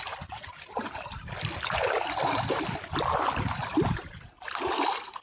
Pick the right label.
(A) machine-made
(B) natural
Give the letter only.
B